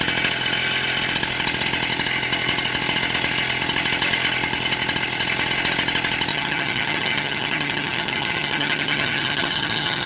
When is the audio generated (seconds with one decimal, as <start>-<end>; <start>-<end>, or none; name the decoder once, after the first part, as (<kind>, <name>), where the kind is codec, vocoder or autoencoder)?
6.3-10.1 (vocoder, HiFi-GAN)